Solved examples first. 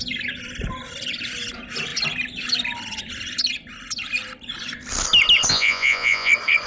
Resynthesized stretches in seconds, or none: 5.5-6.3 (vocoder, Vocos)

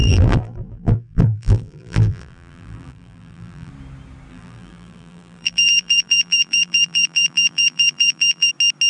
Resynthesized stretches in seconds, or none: 0.0-3.7 (vocoder, BigVGAN v2); 4.3-8.5

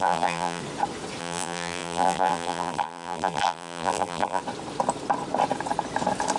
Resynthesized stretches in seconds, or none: 0.0-0.6 (vocoder, BigVGAN v2); 1.2-4.4

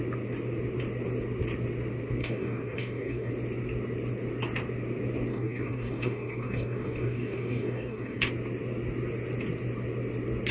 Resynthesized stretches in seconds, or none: 2.2-3.3 (codec, DAC); 5.3-8.3